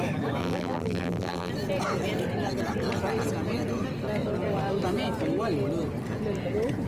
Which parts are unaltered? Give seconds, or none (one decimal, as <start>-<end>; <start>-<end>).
0.0-0.4; 1.5-6.9